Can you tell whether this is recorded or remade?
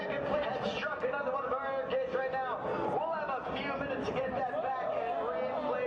recorded